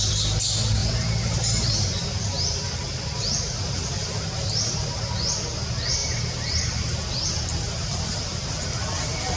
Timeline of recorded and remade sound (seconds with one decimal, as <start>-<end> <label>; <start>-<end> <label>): 0.0-0.8 recorded; 0.8-5.3 remade; 5.3-6.0 recorded; 6.0-6.6 remade; 6.6-7.5 recorded; 7.5-8.8 remade; 8.8-9.4 recorded